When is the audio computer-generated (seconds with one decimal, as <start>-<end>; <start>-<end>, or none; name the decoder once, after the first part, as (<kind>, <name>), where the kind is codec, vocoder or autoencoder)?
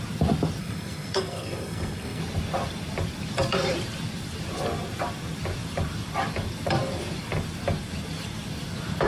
0.6-2.2 (codec, SNAC)